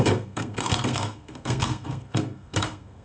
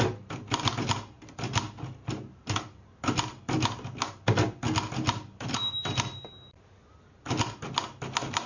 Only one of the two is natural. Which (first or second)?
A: second